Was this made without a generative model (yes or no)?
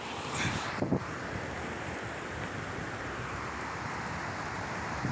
yes